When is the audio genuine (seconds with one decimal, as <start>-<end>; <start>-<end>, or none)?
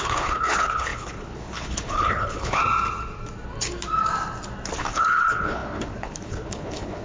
2.6-4.8